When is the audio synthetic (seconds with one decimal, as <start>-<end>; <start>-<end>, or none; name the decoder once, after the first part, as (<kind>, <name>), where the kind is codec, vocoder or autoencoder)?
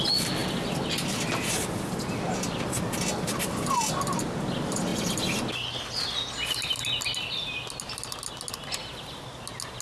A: none